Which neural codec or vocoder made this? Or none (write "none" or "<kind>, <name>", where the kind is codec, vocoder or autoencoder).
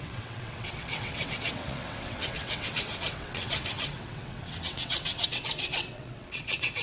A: vocoder, WaveNeXt